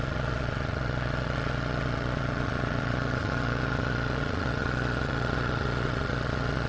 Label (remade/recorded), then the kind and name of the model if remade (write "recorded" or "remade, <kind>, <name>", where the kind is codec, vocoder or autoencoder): remade, vocoder, Vocos